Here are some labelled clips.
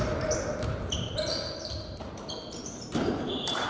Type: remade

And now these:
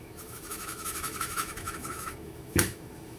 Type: remade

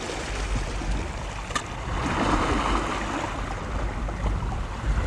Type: recorded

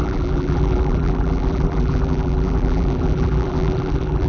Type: remade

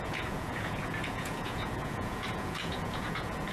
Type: remade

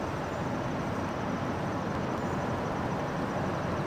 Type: recorded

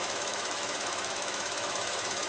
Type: remade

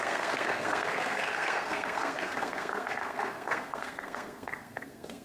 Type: remade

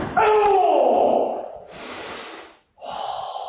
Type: recorded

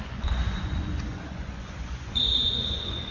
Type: remade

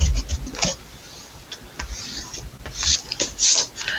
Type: recorded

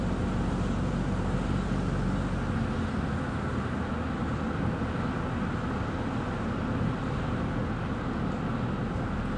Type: recorded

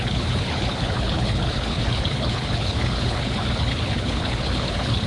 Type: remade